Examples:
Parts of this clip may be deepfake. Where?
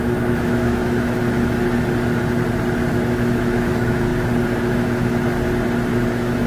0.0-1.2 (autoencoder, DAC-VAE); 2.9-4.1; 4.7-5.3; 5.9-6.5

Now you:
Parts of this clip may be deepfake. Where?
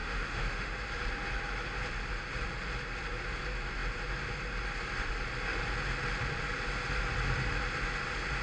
0.0-0.7 (autoencoder, DAC-VAE)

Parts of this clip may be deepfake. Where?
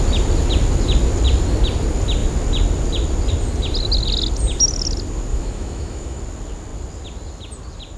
5.3-6.2 (autoencoder, DAC-VAE)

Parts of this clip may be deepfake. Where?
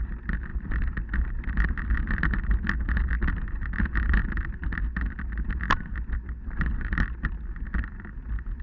none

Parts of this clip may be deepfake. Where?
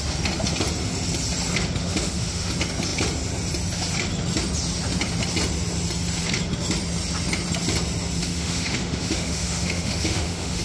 1.8-2.5 (autoencoder, DAC-VAE); 8.2-10.6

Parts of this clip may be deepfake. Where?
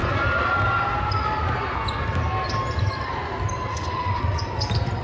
3.7-4.2 (autoencoder, DAC-VAE)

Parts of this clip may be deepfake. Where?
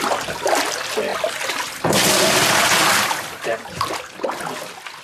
none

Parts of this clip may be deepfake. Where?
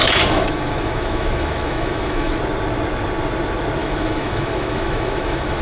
0.0-2.4 (autoencoder, DAC-VAE); 3.8-5.6